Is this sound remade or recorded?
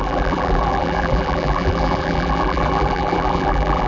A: remade